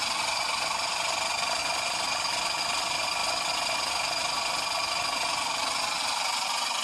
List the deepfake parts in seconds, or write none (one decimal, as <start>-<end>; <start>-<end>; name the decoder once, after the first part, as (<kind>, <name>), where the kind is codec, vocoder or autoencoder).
none